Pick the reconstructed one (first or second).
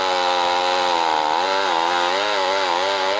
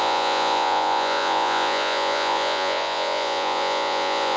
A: second